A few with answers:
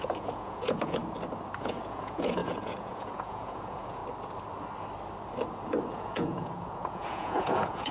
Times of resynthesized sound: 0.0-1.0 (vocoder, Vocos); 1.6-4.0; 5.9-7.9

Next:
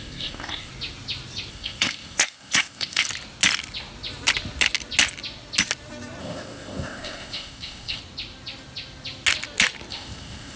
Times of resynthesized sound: 0.0-0.7 (codec, ZipCodec); 1.5-3.1; 6.2-8.0; 9.9-10.6

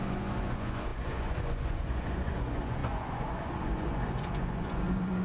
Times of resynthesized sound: 0.0-5.2 (vocoder, Vocos)

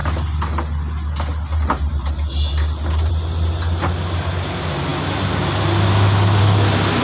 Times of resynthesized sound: none

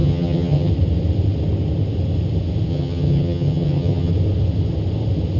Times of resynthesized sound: 0.0-0.7 (vocoder, HiFi-GAN); 2.7-4.1

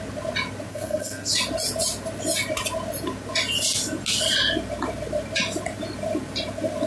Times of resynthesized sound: 0.7-1.3 (codec, SNAC)

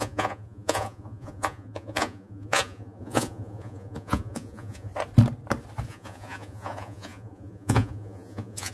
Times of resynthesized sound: 0.0-4.9 (vocoder, Vocos); 5.9-8.7

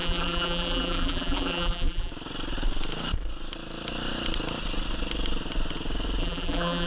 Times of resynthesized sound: 0.0-2.1 (vocoder, BigVGAN v2); 6.2-6.9